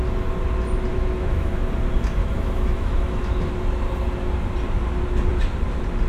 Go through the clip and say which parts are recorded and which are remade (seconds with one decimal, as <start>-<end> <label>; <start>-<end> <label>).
0.0-0.9 recorded; 0.9-1.7 remade; 1.7-2.2 recorded; 2.2-3.5 remade; 3.5-6.1 recorded